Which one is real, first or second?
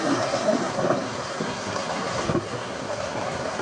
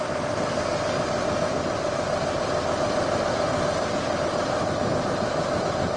second